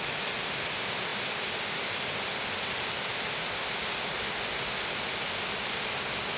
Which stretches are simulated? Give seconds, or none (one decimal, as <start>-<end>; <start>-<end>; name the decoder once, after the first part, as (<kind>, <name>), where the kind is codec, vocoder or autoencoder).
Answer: none